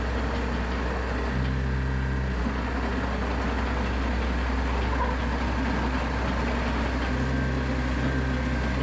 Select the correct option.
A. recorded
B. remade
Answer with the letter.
A